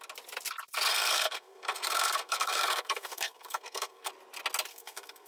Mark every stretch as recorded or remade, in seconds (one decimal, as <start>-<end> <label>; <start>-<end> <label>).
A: 0.0-0.9 recorded; 0.9-4.1 remade; 4.1-4.7 recorded; 4.7-5.3 remade